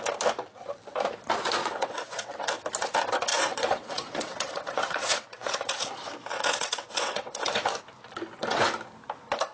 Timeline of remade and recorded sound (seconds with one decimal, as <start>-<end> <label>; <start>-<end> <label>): 0.0-1.6 recorded; 1.6-2.5 remade; 2.5-3.3 recorded; 3.3-5.6 remade; 5.6-6.3 recorded; 6.3-7.7 remade; 7.7-9.5 recorded